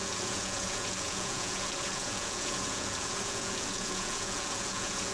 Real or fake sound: fake